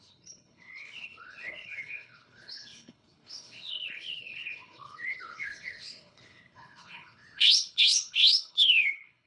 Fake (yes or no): yes